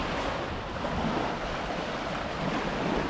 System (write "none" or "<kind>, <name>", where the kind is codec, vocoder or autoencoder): none